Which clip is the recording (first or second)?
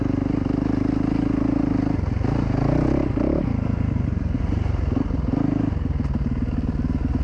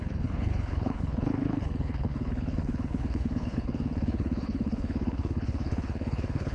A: first